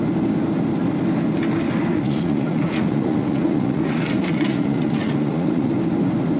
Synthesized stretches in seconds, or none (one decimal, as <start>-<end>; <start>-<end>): 1.9-5.7